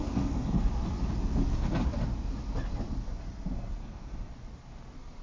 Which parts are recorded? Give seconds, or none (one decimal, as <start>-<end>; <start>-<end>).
0.6-3.8; 4.3-5.2